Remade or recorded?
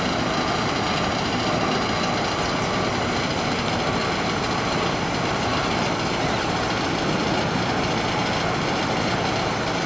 recorded